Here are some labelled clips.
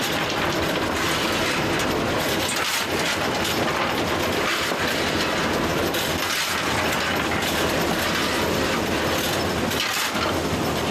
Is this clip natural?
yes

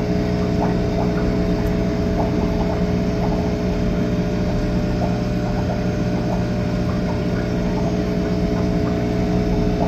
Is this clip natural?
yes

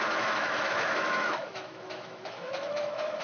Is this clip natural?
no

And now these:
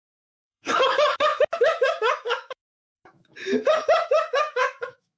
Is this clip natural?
no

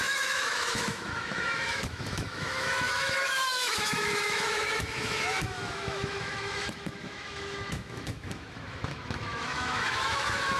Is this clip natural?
no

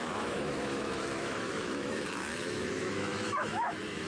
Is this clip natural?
no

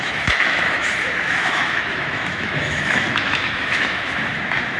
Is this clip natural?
no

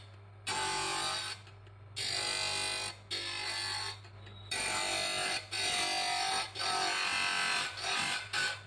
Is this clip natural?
yes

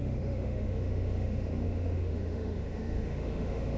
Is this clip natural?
no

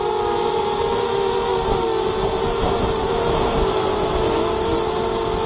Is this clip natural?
yes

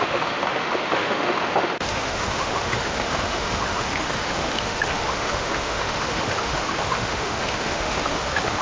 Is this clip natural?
no